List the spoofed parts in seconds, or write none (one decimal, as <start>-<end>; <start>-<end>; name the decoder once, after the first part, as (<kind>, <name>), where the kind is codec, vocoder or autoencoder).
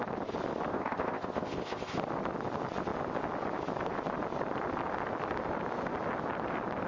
0.7-1.9 (codec, ZipCodec)